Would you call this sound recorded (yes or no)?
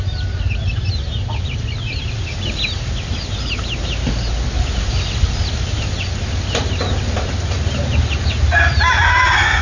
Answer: yes